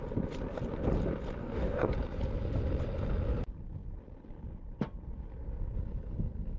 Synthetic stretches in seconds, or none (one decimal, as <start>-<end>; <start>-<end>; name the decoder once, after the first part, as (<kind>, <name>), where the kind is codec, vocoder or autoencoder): 1.4-1.9 (codec, DAC)